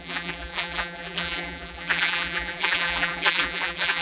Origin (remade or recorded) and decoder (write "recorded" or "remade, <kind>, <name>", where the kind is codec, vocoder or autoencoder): remade, vocoder, BigVGAN v2